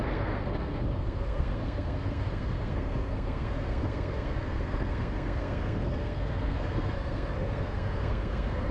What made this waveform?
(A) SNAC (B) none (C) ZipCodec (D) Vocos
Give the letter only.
A